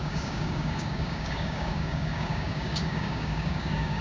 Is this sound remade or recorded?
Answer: remade